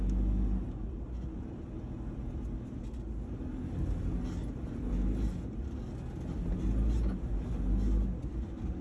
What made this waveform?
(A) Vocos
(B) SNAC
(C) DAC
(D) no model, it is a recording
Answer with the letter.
D